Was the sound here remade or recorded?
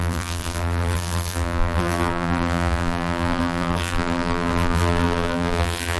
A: remade